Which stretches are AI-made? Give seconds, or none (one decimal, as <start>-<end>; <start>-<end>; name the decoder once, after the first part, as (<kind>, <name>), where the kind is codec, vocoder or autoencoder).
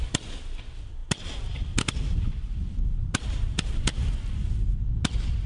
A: none